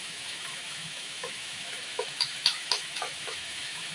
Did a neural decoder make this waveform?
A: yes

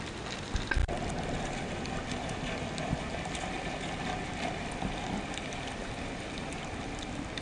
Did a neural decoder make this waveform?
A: no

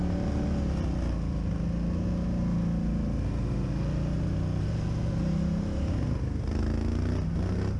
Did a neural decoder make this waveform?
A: no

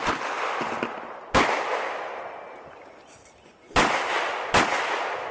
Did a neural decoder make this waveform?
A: no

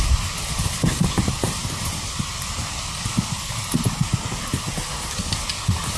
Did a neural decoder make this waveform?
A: no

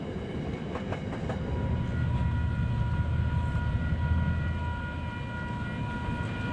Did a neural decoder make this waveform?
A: no